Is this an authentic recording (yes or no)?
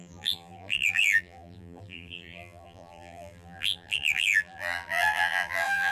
no